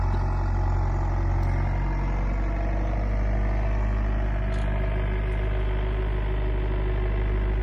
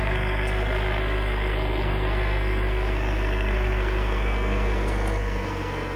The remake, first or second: second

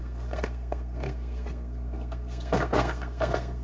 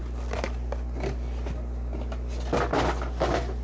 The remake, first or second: first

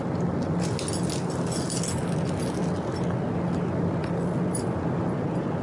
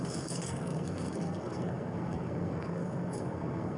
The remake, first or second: second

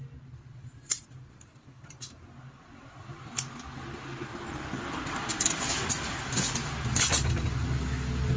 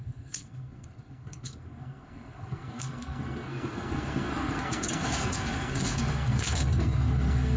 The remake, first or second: second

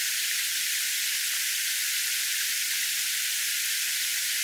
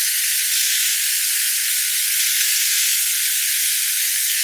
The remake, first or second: second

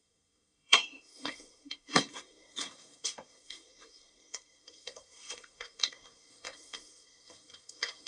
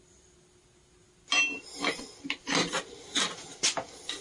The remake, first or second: first